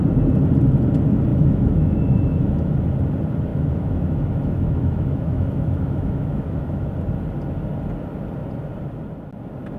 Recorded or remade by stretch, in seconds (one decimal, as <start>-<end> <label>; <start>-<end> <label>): 0.0-1.3 recorded; 1.3-2.7 remade; 2.7-3.5 recorded; 3.5-6.9 remade; 6.9-9.8 recorded